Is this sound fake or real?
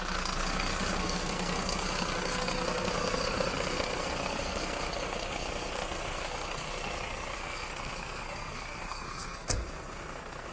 fake